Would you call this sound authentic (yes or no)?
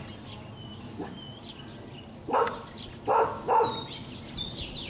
yes